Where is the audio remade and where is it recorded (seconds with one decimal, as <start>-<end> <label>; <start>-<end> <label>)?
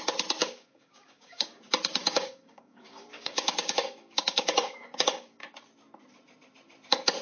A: 0.0-0.4 recorded; 0.4-1.6 remade; 1.6-2.0 recorded; 2.0-5.6 remade; 5.6-7.2 recorded